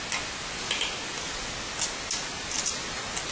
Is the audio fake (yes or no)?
no